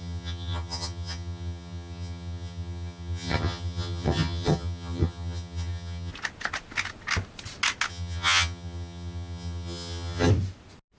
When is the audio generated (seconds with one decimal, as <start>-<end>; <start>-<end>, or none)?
0.0-6.1; 7.9-10.3